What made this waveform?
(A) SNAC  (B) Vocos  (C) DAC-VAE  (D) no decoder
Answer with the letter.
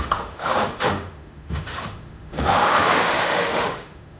C